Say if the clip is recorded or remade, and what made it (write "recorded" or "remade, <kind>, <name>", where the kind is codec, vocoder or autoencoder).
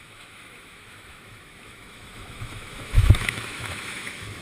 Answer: remade, autoencoder, DAC-VAE